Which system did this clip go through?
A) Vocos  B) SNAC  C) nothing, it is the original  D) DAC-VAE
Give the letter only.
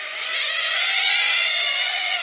A